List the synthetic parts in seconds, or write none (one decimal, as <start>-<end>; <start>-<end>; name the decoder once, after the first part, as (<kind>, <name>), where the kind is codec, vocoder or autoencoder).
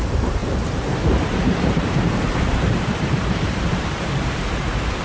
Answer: 0.0-5.0 (vocoder, BigVGAN v2)